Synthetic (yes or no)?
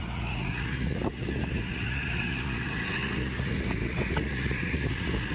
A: yes